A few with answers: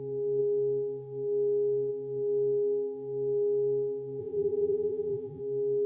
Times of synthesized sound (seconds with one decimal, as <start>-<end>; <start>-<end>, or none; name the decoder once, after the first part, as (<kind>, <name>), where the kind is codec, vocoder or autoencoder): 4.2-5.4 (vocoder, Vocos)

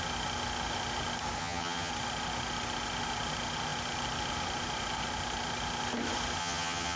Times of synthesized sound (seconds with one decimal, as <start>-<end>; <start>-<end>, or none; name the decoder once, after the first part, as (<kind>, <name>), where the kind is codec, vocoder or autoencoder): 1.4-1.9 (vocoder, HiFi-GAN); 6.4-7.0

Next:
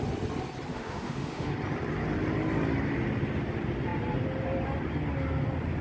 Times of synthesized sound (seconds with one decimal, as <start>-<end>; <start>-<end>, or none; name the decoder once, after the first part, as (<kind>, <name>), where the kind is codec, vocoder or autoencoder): 0.7-1.5 (autoencoder, DAC-VAE)

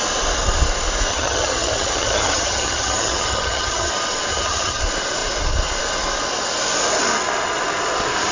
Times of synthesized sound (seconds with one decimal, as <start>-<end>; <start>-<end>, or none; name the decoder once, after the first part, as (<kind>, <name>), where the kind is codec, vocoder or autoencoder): 1.1-3.9 (vocoder, HiFi-GAN); 4.3-4.8

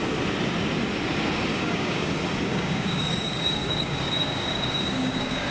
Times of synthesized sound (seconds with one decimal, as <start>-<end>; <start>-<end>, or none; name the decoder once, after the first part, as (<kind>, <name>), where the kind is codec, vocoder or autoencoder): 1.5-2.1 (codec, DAC); 2.5-5.5

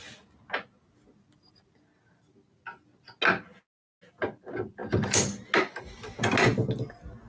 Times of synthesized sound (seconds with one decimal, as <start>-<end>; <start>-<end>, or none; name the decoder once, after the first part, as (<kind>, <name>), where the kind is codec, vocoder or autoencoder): none

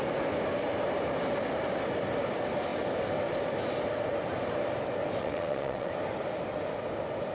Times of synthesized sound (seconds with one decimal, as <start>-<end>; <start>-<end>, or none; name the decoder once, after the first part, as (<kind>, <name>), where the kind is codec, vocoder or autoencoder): 5.2-5.9 (vocoder, WaveNeXt)